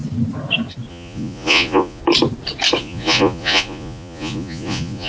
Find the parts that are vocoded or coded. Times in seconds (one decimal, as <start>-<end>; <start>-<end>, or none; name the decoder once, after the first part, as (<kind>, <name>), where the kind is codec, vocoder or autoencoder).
0.9-2.0 (vocoder, Vocos); 2.8-5.1